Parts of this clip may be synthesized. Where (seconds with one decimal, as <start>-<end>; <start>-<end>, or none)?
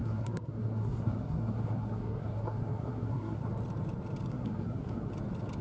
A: 0.0-3.4; 4.3-5.1